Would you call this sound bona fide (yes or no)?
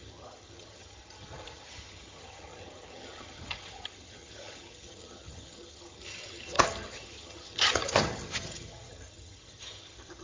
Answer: no